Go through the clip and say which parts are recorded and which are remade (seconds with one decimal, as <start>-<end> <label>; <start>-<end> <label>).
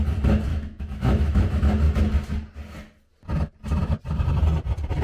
0.0-0.5 recorded; 0.5-1.6 remade; 1.6-5.0 recorded